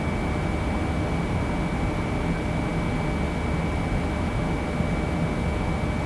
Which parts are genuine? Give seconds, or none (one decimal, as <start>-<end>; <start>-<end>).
0.0-6.1